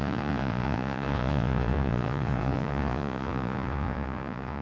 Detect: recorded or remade remade